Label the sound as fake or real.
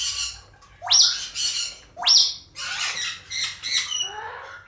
real